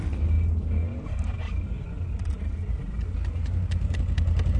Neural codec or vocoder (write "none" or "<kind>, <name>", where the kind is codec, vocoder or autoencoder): none